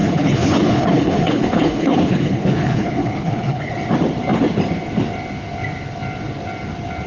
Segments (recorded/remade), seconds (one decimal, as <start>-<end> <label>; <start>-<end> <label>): 0.0-3.7 remade; 3.7-7.1 recorded

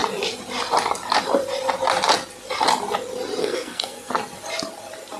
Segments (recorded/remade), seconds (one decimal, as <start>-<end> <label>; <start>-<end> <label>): 0.0-3.4 recorded; 3.4-4.1 remade; 4.1-5.2 recorded

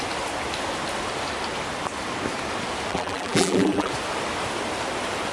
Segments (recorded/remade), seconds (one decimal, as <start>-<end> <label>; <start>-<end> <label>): 0.0-2.9 recorded; 2.9-3.9 remade; 3.9-5.3 recorded

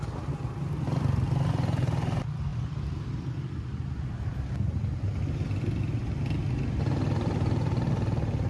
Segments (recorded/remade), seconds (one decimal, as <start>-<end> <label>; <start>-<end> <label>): 0.0-8.5 recorded